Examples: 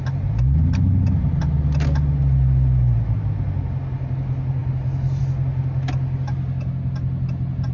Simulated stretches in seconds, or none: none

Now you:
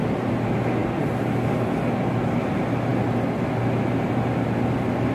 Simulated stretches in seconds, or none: none

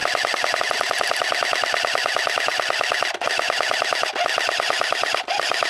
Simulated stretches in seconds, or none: none